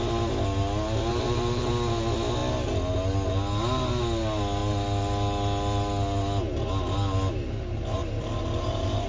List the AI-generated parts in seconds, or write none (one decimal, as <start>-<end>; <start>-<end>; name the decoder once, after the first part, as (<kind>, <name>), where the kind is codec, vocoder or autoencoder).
1.1-1.7 (vocoder, BigVGAN v2); 8.0-9.1